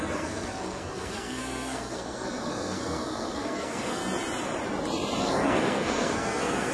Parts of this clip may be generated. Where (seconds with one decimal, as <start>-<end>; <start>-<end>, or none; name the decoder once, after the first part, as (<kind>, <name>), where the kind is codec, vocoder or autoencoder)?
0.0-4.0 (codec, SNAC); 5.2-6.7